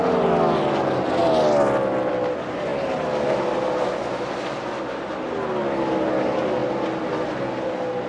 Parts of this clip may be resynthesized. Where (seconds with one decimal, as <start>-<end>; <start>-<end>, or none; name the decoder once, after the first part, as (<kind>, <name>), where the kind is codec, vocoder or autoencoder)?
none